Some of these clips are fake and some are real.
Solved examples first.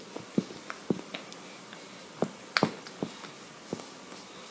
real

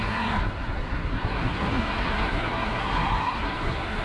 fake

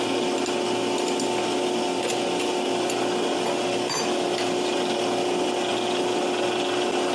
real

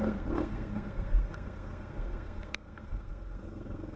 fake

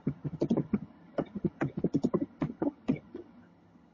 fake